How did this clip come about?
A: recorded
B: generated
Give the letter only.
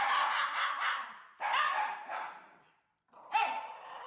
B